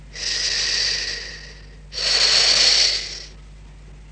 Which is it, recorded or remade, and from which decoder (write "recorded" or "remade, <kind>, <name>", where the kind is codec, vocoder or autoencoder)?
recorded